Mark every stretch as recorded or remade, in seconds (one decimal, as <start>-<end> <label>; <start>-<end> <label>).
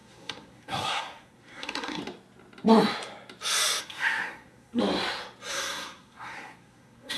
0.0-2.0 remade; 2.0-3.8 recorded; 3.8-4.8 remade; 4.8-5.5 recorded; 5.5-7.2 remade